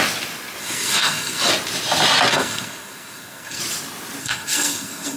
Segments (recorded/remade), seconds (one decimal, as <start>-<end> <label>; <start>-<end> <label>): 0.0-0.6 recorded; 0.6-1.5 remade; 1.5-2.3 recorded; 2.3-3.6 remade; 3.6-4.2 recorded; 4.2-5.2 remade

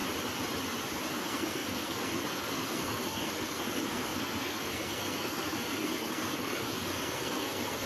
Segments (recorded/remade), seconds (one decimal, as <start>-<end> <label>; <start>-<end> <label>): 0.0-1.1 recorded; 1.1-7.9 remade

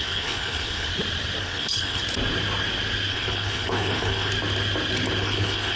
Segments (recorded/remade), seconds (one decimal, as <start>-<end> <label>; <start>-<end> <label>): 0.0-0.9 remade; 0.9-1.4 recorded; 1.4-2.0 remade; 2.0-3.1 recorded; 3.1-4.3 remade; 4.3-5.2 recorded; 5.2-5.8 remade

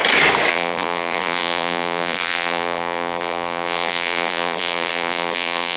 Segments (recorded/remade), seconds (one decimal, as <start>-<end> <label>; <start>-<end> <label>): 0.0-0.5 recorded; 0.5-5.8 remade

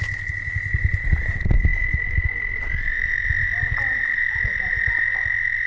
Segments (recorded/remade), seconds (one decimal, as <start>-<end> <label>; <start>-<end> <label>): 0.0-5.7 recorded

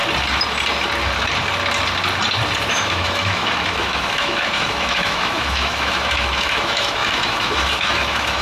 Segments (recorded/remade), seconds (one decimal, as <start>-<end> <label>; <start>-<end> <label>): 0.0-2.7 recorded; 2.7-8.4 remade